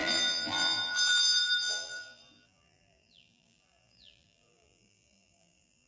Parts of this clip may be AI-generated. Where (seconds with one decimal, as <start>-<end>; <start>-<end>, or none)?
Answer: 0.0-5.9